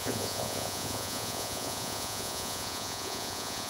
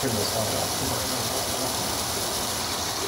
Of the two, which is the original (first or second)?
second